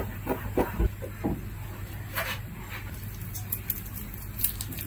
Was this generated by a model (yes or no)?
no